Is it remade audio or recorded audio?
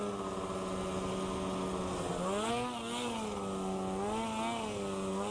recorded